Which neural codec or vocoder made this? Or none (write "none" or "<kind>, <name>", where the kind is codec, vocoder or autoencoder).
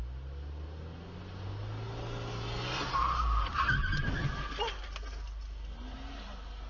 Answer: none